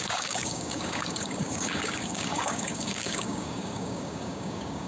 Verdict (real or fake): fake